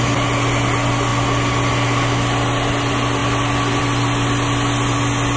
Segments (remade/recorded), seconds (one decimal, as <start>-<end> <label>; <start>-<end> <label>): 0.0-5.4 recorded